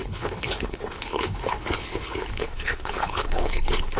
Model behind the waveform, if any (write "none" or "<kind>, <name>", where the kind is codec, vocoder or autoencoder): codec, HILCodec